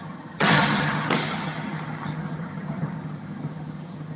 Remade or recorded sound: remade